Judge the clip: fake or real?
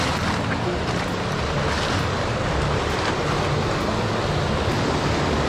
real